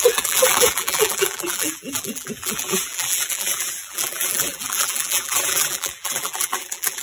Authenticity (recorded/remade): remade